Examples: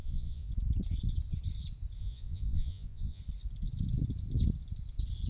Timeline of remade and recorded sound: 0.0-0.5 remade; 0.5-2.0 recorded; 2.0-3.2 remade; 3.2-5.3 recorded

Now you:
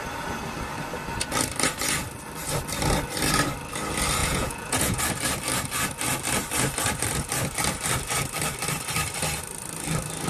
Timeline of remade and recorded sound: 0.0-4.2 recorded; 4.2-5.0 remade; 5.0-10.3 recorded

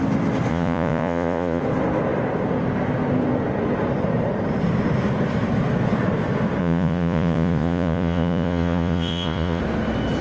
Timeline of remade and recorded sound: 0.0-0.5 recorded; 0.5-1.6 remade; 1.6-6.6 recorded; 6.6-9.6 remade; 9.6-10.2 recorded

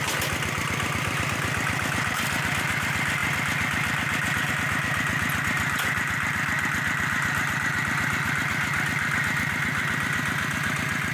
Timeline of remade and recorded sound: 0.0-11.1 recorded

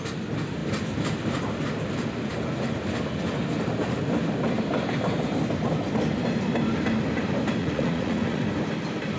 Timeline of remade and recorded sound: 0.0-7.6 recorded; 7.6-8.4 remade; 8.4-9.2 recorded

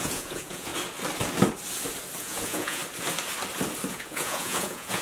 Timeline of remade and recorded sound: 0.0-0.7 remade; 0.7-2.2 recorded; 2.2-2.8 remade; 2.8-3.9 recorded; 3.9-5.0 remade

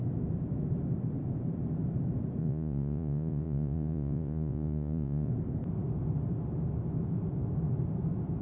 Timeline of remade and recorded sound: 0.0-2.4 recorded; 2.4-5.3 remade; 5.3-8.4 recorded